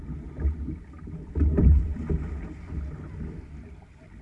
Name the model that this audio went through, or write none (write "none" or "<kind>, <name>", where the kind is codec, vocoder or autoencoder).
none